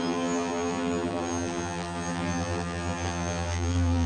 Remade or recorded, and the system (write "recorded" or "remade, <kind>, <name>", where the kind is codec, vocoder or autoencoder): remade, vocoder, BigVGAN v2